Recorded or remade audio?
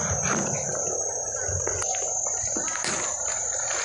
recorded